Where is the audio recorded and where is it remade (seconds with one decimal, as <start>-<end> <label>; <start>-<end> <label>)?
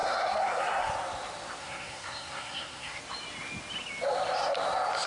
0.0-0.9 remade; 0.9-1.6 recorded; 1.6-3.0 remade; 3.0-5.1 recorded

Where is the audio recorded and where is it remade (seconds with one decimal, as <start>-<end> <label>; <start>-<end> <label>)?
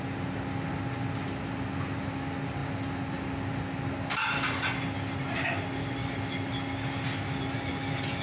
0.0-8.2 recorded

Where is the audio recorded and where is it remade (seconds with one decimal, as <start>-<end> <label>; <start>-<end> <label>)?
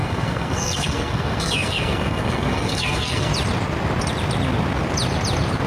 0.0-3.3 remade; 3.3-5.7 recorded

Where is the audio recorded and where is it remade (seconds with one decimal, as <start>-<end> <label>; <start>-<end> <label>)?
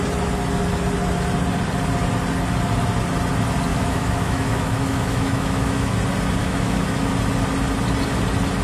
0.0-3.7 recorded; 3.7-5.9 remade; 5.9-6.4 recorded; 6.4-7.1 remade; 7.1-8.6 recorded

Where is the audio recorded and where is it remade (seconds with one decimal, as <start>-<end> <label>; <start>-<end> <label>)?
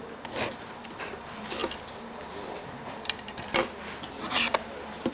0.0-5.1 recorded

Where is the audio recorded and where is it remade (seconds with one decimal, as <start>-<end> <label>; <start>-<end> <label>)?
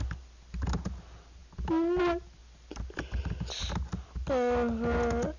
0.0-5.4 recorded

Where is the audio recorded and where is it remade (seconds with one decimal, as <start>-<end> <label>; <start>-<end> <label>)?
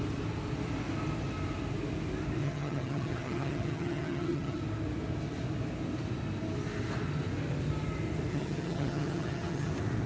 0.0-2.4 recorded; 2.4-4.6 remade; 4.6-8.3 recorded; 8.3-9.7 remade; 9.7-10.1 recorded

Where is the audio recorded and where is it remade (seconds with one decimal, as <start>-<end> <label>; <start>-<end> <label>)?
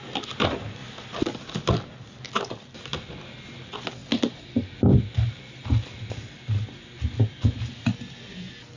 0.0-8.8 recorded